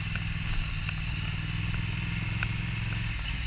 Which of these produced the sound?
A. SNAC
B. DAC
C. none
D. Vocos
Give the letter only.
C